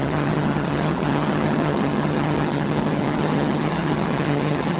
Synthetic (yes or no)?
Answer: yes